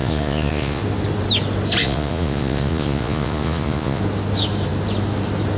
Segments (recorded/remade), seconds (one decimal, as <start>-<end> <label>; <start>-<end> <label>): 0.0-0.8 remade; 0.8-1.8 recorded; 1.8-4.0 remade; 4.0-5.6 recorded